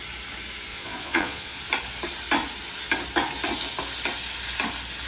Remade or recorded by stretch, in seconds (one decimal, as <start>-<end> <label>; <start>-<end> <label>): 0.0-0.7 recorded; 0.7-1.6 remade; 1.6-5.1 recorded